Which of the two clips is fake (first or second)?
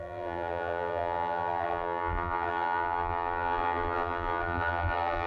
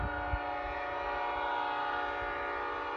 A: first